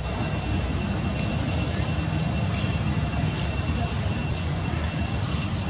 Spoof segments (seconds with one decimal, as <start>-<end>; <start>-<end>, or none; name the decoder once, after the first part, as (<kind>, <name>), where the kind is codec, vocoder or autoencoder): 4.3-5.0 (vocoder, Vocos)